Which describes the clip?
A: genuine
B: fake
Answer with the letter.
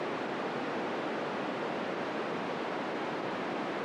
A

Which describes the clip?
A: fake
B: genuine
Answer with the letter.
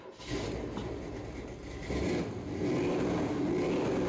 B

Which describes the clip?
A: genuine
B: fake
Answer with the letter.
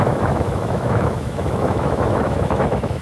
B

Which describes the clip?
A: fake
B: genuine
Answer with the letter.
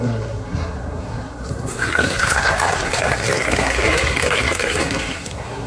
A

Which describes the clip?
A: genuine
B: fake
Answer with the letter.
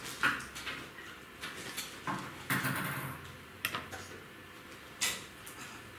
A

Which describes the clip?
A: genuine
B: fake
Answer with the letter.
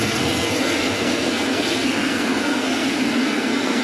B